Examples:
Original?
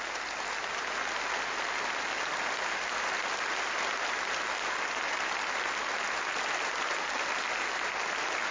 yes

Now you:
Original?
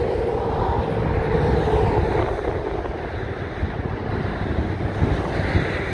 yes